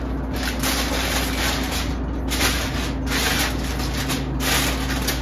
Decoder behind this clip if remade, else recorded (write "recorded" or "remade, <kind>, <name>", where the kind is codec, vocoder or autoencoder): recorded